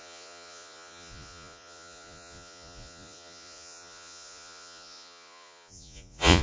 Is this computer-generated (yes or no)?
yes